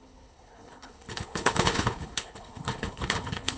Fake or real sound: fake